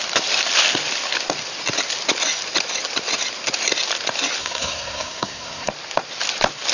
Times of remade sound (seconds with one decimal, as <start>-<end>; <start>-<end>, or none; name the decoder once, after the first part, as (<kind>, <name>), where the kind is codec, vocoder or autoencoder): 4.4-5.7 (codec, SNAC)